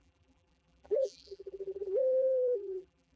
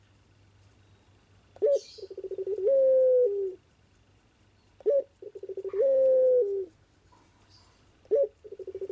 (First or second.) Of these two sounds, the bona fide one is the second